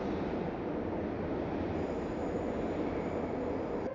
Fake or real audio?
real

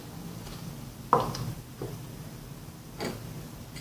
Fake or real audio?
real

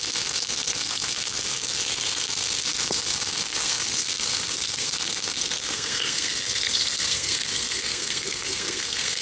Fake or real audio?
fake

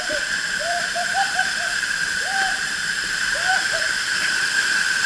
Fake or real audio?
fake